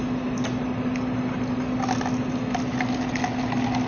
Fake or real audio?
real